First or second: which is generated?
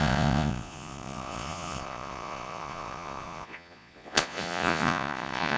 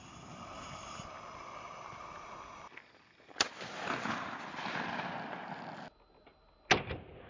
first